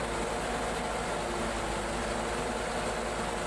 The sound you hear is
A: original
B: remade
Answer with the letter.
A